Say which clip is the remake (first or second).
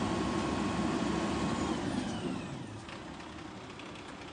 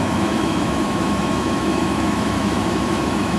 second